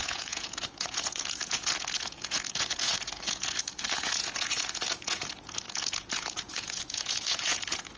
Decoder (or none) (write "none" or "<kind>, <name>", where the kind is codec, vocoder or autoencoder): vocoder, Vocos